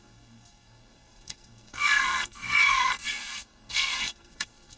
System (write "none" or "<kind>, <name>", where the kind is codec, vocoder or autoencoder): codec, SNAC